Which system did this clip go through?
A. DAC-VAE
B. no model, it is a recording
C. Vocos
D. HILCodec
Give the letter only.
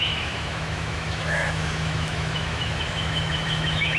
A